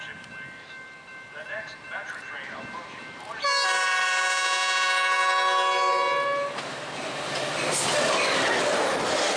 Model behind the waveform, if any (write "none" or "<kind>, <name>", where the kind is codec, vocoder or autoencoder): none